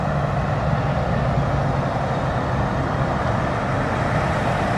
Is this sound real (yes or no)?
yes